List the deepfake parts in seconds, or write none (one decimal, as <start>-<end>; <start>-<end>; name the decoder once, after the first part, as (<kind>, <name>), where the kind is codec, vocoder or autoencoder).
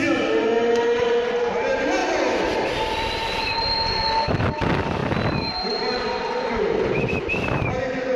none